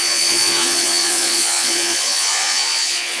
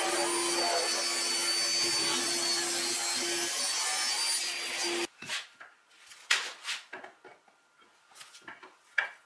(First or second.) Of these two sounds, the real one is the second